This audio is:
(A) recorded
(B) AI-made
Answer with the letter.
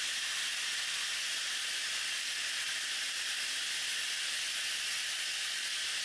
A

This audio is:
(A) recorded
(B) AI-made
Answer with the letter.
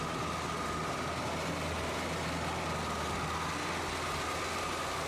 A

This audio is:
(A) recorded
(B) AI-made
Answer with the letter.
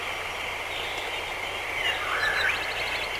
A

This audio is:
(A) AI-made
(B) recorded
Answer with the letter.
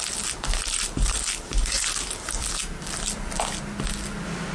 B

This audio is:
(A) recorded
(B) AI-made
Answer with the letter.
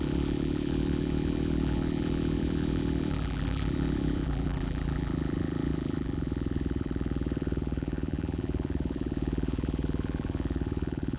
B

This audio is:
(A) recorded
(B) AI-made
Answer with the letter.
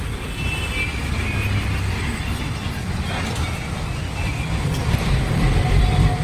B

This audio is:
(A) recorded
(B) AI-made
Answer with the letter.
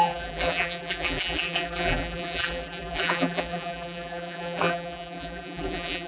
B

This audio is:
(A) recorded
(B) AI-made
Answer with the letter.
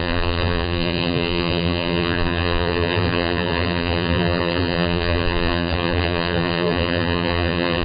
B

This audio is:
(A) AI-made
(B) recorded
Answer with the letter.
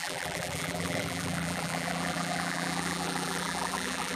A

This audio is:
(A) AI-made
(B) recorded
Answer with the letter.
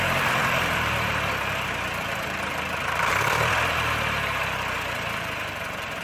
A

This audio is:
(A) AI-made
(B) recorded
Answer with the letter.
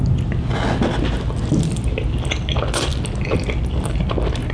B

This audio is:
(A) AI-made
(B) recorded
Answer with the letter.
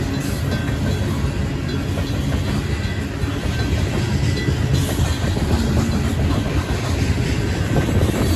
B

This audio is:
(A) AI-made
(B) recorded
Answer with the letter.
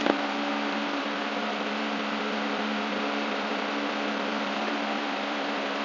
A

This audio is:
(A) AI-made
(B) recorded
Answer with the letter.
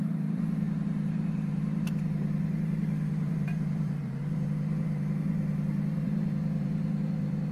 A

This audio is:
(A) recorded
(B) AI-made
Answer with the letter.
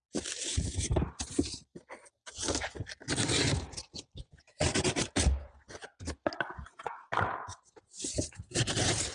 A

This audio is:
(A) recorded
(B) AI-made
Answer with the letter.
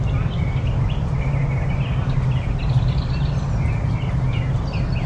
A